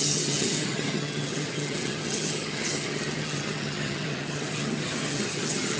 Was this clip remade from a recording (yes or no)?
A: yes